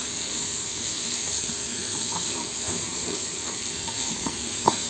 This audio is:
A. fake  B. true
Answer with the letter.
A